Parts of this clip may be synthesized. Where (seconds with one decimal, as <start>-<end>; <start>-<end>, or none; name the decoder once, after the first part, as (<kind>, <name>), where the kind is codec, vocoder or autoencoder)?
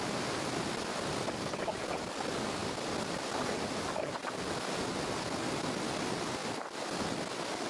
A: none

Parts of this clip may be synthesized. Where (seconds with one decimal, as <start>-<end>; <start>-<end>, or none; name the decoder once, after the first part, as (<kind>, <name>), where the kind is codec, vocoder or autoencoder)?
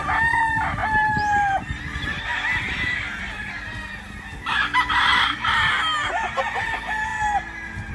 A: 0.8-1.8 (vocoder, BigVGAN v2); 5.1-5.7